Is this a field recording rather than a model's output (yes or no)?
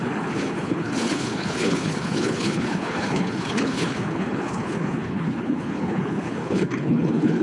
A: no